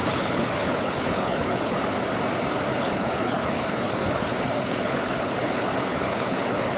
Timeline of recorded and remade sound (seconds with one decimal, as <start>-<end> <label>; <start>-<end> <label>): 0.0-1.8 remade; 1.8-2.7 recorded; 2.7-6.8 remade